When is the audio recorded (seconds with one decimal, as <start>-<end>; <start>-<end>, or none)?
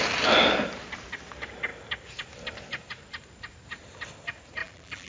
0.0-4.6